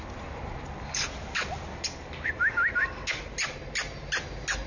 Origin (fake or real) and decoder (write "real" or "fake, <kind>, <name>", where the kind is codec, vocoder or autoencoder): real